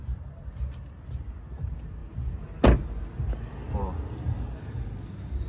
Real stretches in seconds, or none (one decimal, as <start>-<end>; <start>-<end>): 0.0-5.5